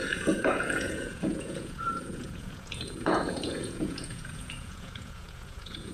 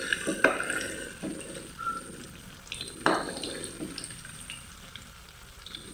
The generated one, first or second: first